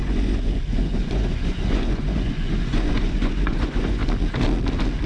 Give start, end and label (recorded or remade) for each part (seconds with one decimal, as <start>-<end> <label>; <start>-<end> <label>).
0.0-4.0 remade; 4.0-5.1 recorded